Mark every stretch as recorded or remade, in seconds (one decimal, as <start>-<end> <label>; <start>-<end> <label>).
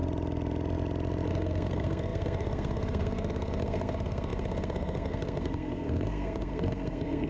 0.0-1.3 recorded; 1.3-7.3 remade